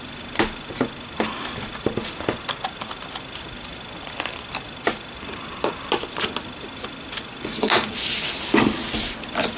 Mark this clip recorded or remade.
recorded